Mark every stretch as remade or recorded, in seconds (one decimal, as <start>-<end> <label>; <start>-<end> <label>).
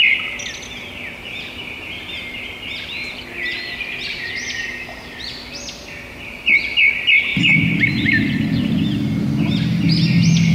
0.0-3.5 recorded; 3.5-5.3 remade; 5.3-10.5 recorded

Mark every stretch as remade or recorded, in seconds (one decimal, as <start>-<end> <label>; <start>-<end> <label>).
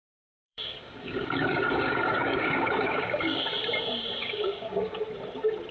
0.0-3.4 remade; 3.4-4.2 recorded; 4.2-5.0 remade; 5.0-5.7 recorded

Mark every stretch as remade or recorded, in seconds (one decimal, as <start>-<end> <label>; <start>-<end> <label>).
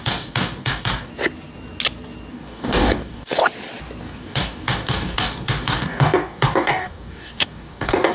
0.0-1.1 remade; 1.1-2.3 recorded; 2.3-3.4 remade; 3.4-4.0 recorded; 4.0-8.1 remade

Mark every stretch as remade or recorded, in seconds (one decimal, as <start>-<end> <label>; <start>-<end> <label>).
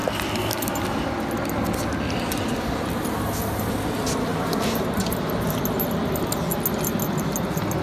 0.0-4.3 recorded; 4.3-5.6 remade; 5.6-7.8 recorded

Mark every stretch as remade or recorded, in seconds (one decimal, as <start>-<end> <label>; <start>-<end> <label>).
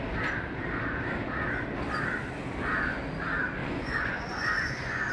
0.0-3.6 recorded; 3.6-5.1 remade